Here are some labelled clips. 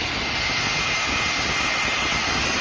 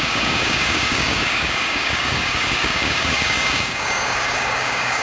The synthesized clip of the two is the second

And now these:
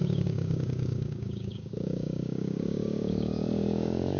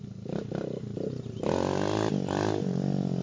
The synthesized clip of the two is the first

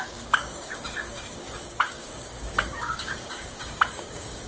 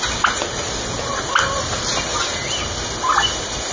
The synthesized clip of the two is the first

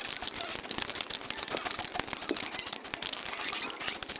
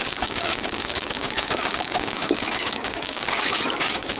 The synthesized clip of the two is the second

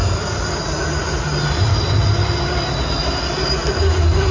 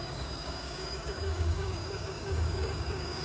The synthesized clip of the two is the second